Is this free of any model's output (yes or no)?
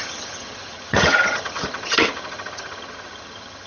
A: no